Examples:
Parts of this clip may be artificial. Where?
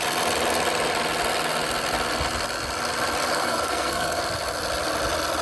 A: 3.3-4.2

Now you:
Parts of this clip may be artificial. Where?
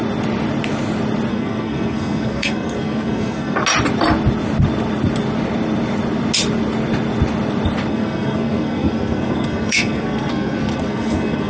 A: 1.3-3.6; 7.9-11.5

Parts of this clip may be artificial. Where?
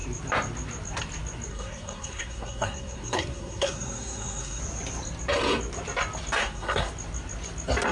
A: 1.5-4.6; 6.4-6.9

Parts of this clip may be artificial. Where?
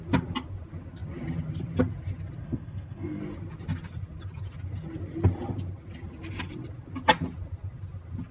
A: 2.4-3.2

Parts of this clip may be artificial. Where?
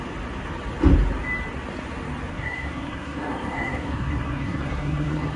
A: 2.3-5.4